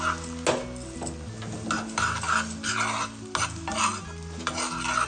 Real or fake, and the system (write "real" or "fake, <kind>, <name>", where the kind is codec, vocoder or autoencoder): real